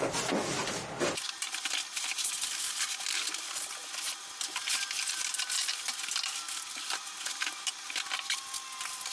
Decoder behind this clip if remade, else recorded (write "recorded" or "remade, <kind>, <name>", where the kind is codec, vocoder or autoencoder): recorded